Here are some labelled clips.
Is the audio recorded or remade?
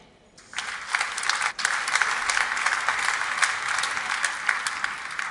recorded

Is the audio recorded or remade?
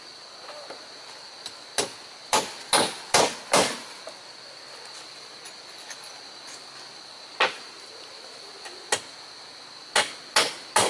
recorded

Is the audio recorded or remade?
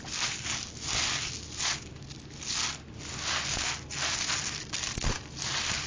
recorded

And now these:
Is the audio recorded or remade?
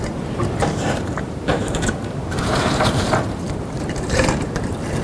remade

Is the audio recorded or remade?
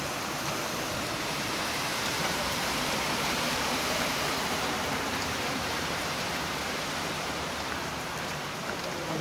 remade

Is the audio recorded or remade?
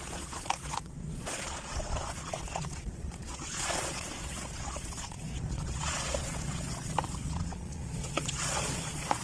remade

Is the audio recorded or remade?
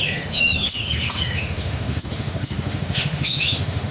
remade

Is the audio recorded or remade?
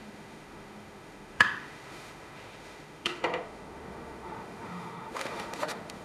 remade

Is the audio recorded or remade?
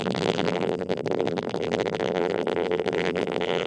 remade